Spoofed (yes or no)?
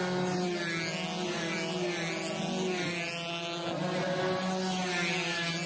no